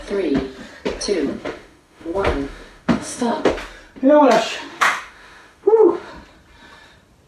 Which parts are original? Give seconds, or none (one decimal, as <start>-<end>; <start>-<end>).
0.0-1.3; 3.5-4.7; 6.1-7.3